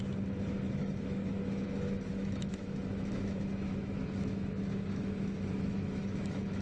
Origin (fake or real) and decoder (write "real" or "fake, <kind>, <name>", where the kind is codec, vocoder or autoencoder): fake, autoencoder, DAC-VAE